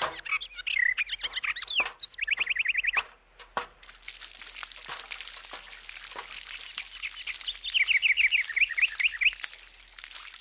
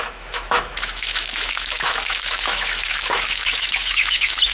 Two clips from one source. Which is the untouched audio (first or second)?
first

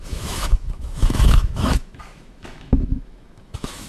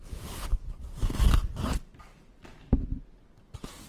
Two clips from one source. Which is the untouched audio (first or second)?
second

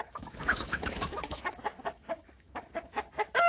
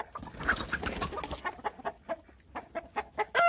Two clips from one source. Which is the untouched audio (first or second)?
second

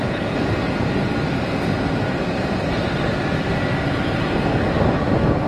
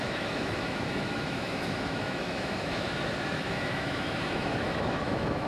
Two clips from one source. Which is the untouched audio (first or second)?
first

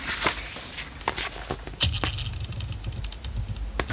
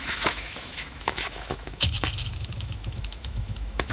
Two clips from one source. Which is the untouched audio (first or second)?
first